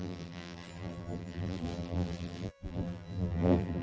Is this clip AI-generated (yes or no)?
yes